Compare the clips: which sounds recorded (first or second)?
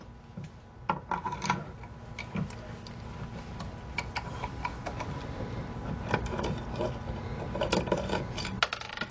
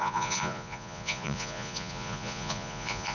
first